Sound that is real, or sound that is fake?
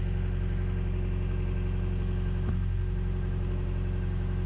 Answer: real